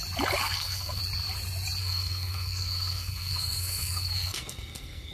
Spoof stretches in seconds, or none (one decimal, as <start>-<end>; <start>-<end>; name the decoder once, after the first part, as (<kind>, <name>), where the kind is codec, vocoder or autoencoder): 0.4-1.0 (codec, SNAC); 1.8-5.1